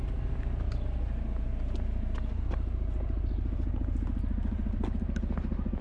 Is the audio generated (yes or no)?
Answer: no